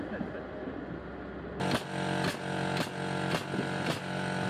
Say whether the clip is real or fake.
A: real